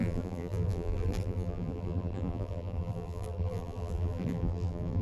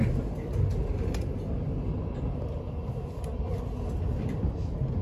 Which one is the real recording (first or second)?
second